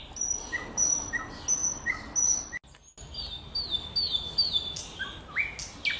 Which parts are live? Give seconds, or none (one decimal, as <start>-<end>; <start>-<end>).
0.0-6.0

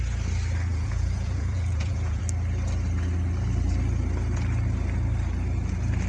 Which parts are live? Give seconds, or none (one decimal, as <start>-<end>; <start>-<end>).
0.0-0.7; 2.2-6.1

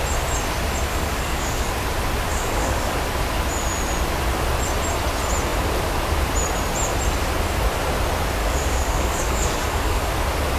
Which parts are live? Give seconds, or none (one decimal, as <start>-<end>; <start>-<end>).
0.0-0.9; 1.7-2.3; 2.9-8.4; 10.1-10.6

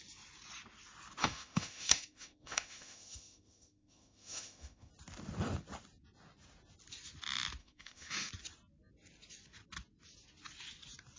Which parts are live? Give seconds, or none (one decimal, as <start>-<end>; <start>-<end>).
0.0-1.2; 4.9-7.6; 8.3-11.2

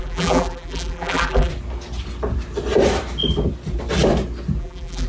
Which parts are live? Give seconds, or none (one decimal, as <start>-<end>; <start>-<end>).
1.5-4.6